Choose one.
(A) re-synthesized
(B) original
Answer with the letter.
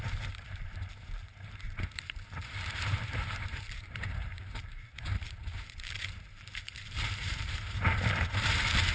A